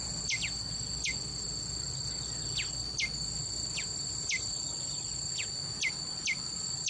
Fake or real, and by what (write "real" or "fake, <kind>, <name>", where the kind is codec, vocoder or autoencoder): real